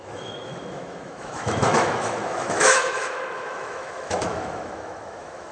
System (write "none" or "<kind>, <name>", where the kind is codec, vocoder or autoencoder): autoencoder, DAC-VAE